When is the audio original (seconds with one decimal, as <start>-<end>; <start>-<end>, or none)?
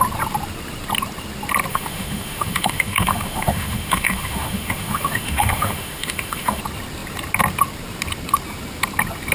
0.0-1.7; 6.6-9.3